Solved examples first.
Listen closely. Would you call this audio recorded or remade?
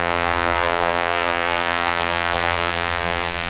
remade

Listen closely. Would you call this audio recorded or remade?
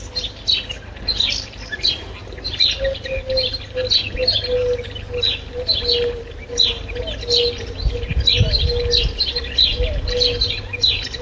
recorded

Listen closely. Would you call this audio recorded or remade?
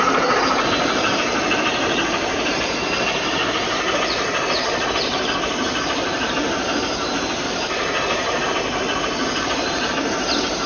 remade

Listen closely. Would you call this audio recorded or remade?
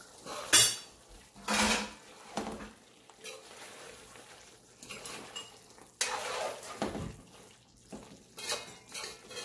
recorded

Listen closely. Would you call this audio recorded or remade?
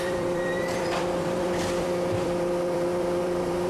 remade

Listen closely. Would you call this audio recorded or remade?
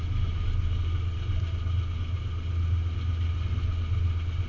recorded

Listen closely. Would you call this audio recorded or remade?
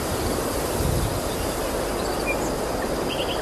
recorded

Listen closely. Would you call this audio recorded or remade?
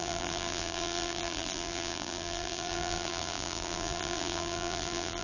remade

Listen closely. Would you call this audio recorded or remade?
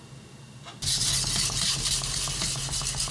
recorded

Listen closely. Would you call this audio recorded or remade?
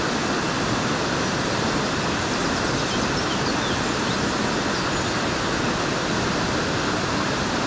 recorded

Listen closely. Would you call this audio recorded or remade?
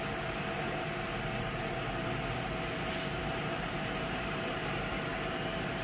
remade